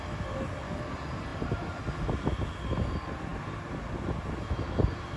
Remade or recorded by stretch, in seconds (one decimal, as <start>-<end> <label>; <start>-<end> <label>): 0.0-5.2 recorded